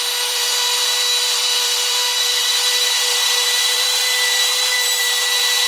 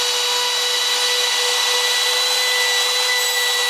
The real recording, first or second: second